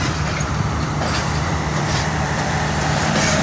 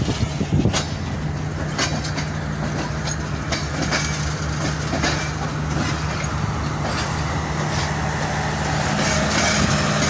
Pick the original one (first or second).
second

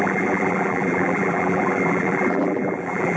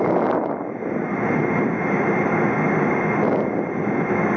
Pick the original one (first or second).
second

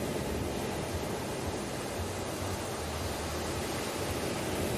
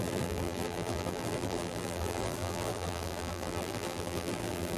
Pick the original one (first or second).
first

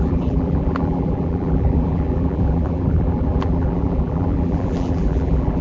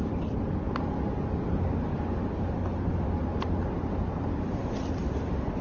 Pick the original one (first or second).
second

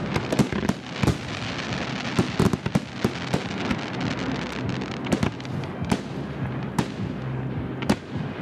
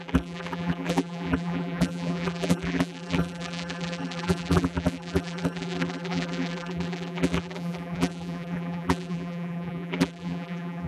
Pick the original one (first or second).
first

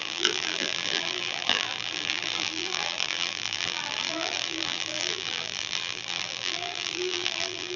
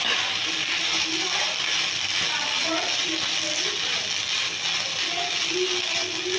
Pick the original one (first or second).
second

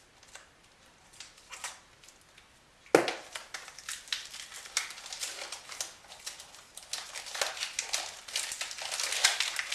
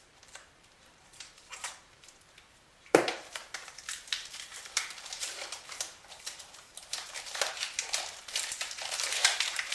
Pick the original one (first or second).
first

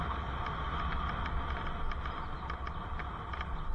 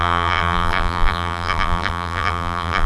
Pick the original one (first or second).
first